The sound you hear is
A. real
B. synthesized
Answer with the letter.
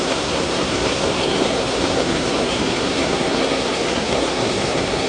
B